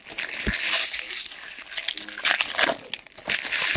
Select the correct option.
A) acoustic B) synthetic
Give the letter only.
A